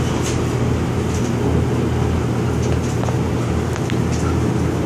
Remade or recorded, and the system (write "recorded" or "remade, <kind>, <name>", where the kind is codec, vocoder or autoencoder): recorded